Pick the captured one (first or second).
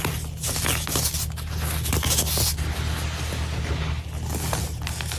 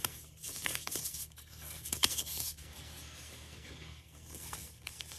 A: first